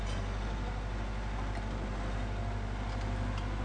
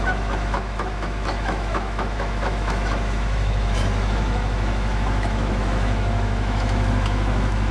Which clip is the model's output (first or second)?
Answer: second